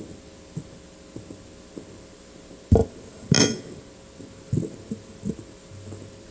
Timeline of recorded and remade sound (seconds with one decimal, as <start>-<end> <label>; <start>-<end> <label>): 0.0-6.3 recorded